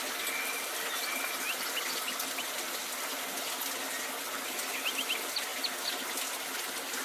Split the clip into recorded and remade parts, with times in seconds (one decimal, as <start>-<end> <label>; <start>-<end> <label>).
0.0-7.0 recorded